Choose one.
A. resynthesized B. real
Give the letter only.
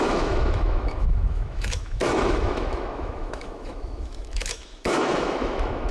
A